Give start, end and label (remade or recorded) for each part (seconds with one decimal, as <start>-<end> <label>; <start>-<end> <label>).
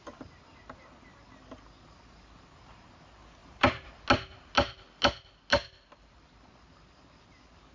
0.0-3.4 recorded; 3.4-3.9 remade; 3.9-7.7 recorded